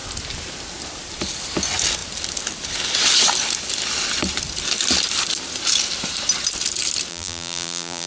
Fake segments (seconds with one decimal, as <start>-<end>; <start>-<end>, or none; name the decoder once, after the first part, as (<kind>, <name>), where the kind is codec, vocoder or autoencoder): 7.1-8.1 (vocoder, BigVGAN v2)